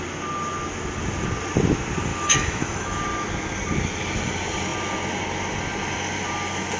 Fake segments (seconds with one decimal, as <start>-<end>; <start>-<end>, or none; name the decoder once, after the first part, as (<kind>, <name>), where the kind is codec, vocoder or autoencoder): 2.1-3.0 (autoencoder, DAC-VAE)